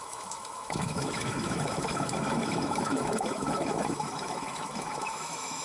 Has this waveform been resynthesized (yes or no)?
yes